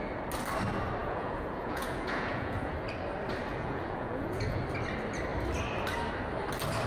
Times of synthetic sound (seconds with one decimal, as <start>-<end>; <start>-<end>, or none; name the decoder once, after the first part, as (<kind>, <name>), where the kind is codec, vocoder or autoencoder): 1.0-2.7 (vocoder, Vocos); 3.5-4.6